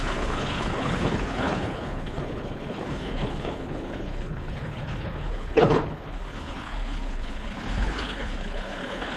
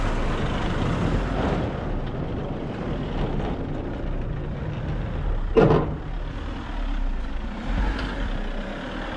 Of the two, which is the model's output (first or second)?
first